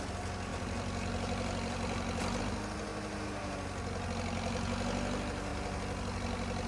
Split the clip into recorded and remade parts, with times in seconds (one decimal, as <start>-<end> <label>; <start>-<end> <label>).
0.0-0.5 recorded; 0.5-2.4 remade; 2.4-6.7 recorded